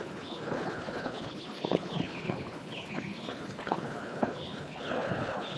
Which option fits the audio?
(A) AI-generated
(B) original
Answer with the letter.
A